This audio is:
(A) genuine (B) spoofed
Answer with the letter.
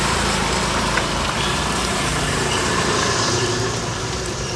B